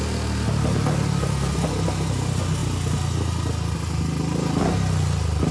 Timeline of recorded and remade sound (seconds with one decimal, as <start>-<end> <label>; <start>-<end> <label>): 0.0-5.5 recorded